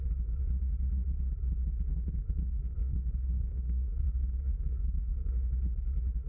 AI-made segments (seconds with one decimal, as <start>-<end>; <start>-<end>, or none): 1.9-5.3